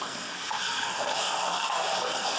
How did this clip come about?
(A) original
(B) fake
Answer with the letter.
B